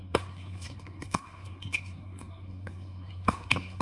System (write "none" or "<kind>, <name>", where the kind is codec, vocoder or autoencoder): codec, SNAC